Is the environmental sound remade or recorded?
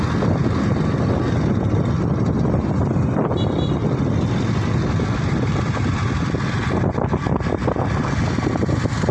recorded